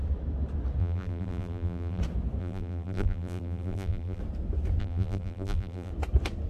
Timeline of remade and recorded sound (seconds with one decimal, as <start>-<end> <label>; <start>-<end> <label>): 0.0-0.8 recorded; 0.8-2.0 remade; 2.0-2.4 recorded; 2.4-4.2 remade; 4.2-4.8 recorded; 4.8-5.9 remade; 5.9-6.5 recorded